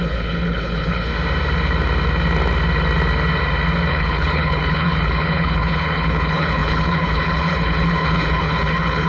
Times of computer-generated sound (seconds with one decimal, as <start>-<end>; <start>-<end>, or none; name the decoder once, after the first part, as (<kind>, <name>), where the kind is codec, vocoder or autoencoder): 0.0-1.1 (codec, HILCodec); 3.9-9.1